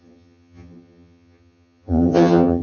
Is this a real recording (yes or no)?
no